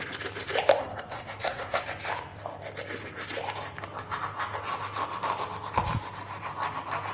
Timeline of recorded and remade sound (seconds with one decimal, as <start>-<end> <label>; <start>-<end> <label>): 0.0-0.8 recorded; 0.8-1.8 remade; 1.8-7.1 recorded